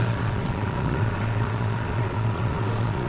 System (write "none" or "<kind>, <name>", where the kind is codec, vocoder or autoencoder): vocoder, Vocos